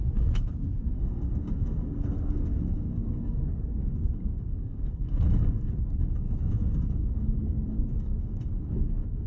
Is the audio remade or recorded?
remade